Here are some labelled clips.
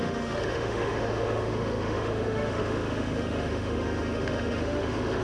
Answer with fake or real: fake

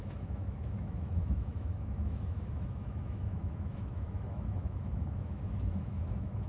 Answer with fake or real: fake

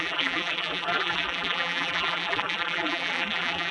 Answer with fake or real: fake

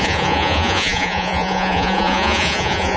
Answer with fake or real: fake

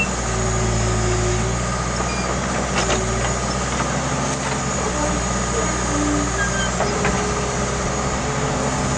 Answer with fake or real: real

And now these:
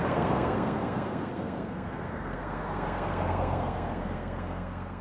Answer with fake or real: fake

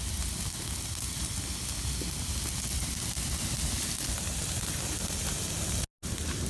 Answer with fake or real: real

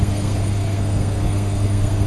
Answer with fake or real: fake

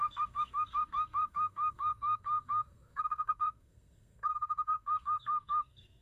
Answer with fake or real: fake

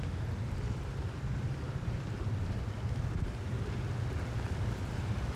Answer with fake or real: real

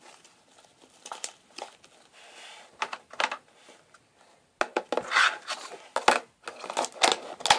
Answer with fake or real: real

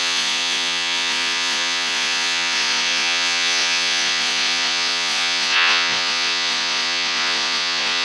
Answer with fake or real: fake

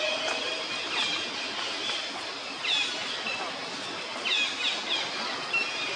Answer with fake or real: real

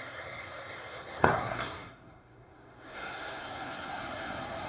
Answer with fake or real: fake